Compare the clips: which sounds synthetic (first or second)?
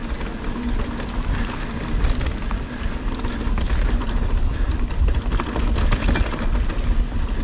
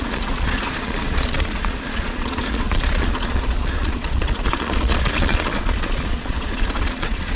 second